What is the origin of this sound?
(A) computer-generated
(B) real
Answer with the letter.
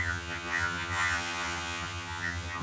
A